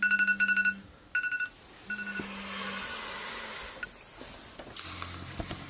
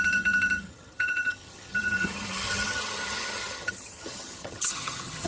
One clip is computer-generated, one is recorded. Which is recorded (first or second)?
first